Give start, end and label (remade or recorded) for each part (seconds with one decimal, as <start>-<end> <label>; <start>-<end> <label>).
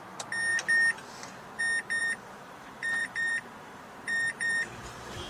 0.0-2.0 recorded; 2.0-5.3 remade